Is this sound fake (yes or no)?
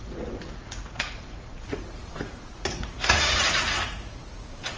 yes